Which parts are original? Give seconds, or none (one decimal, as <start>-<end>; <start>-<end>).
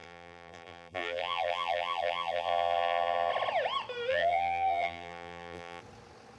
3.3-4.1; 5.8-6.4